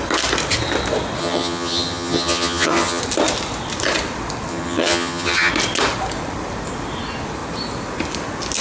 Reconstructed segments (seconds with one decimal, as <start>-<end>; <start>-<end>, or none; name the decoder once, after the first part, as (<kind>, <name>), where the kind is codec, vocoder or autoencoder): 1.2-3.0 (vocoder, HiFi-GAN); 4.5-5.5